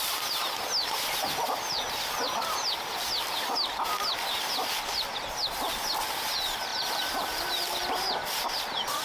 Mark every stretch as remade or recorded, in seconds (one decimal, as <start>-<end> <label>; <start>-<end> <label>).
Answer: 0.0-6.7 recorded; 6.7-7.5 remade; 7.5-9.0 recorded